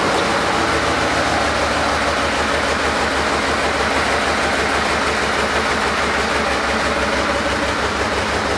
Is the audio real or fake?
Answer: real